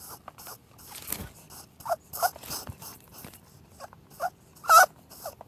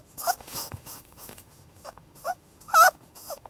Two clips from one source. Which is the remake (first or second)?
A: second